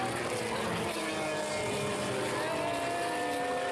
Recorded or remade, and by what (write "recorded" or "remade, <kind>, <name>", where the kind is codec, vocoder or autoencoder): recorded